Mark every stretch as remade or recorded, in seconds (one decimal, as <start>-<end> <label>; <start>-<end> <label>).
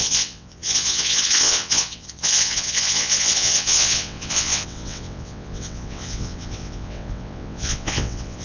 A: 0.0-8.4 remade